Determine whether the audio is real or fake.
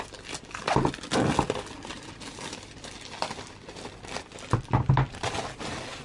real